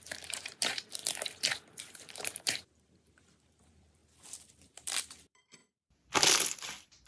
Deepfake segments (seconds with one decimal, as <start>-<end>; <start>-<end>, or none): 0.0-1.0; 1.8-4.0; 5.0-5.6